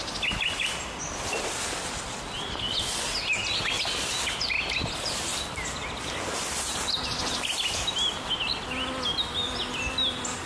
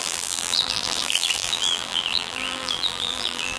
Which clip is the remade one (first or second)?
second